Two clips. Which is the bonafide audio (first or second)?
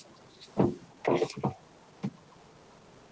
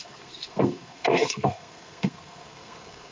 first